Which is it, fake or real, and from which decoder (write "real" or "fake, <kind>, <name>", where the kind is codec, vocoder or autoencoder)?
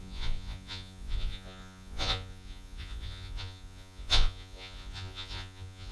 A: fake, vocoder, Vocos